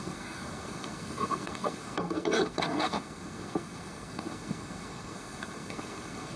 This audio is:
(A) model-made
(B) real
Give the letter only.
A